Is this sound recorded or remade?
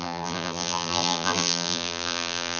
remade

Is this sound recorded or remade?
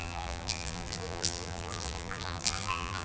remade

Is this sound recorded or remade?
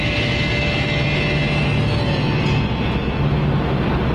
recorded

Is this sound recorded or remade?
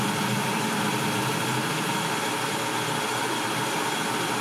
remade